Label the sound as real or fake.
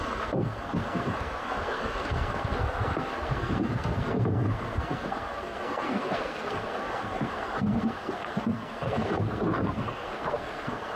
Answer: fake